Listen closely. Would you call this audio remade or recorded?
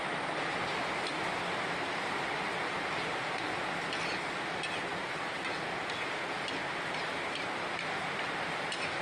recorded